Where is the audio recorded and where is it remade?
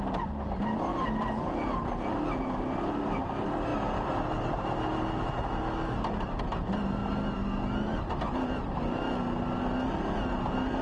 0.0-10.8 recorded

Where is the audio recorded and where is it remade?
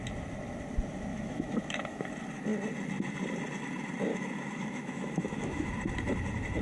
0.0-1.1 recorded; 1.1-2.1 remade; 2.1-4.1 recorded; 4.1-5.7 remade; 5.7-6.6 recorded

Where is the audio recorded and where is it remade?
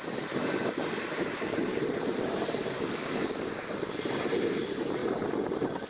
0.0-2.6 recorded; 2.6-3.7 remade; 3.7-5.9 recorded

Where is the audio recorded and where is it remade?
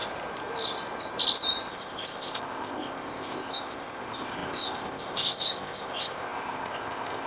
0.0-1.7 recorded; 1.7-7.3 remade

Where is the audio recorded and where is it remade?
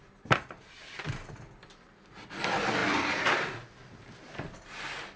0.0-5.2 recorded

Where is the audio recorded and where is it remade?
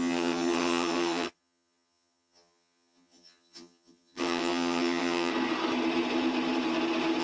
0.0-5.3 remade; 5.3-7.2 recorded